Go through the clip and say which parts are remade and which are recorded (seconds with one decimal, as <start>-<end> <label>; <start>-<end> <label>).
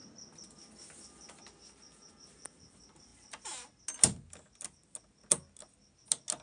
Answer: 0.0-6.4 recorded